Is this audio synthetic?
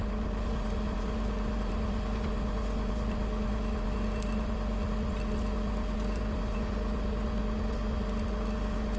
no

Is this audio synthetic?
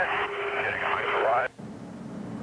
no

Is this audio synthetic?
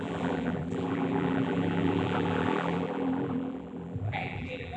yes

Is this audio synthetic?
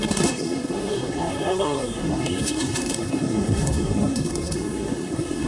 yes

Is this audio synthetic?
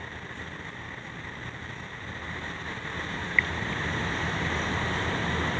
no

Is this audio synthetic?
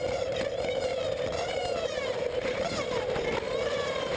yes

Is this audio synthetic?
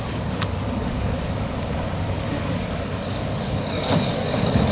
yes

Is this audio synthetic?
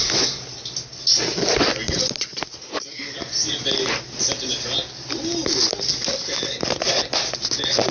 no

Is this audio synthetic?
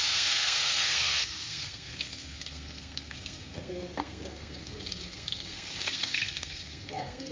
yes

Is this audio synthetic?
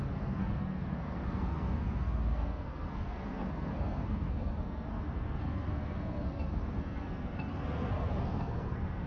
yes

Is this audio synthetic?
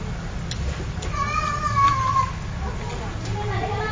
no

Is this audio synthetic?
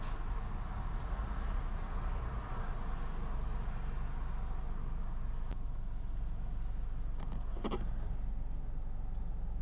no